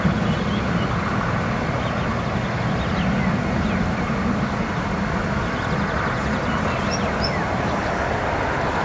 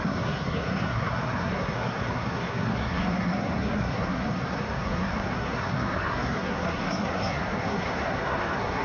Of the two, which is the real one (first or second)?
first